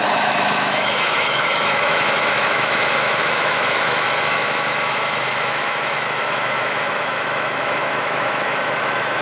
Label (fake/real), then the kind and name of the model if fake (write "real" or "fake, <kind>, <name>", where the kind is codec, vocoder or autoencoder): fake, autoencoder, DAC-VAE